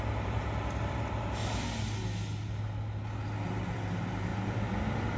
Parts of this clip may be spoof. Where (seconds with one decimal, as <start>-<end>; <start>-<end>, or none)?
0.0-1.4; 3.4-4.3